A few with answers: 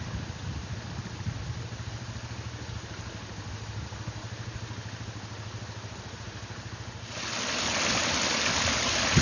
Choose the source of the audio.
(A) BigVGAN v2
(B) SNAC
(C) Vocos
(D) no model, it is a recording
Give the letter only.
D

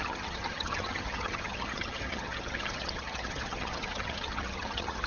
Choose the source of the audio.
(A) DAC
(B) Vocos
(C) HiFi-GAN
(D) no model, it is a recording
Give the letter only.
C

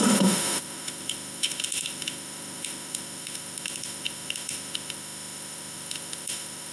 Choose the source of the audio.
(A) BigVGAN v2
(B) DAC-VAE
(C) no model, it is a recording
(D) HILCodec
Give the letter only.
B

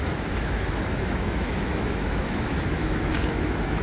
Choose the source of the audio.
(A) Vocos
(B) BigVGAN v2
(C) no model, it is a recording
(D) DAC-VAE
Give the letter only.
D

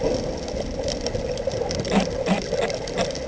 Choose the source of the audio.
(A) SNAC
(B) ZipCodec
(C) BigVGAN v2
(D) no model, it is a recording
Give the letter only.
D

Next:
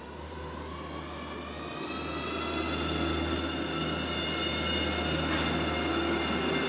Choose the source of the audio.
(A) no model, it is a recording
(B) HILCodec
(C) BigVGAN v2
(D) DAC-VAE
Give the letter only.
A